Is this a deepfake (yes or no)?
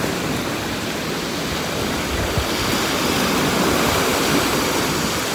no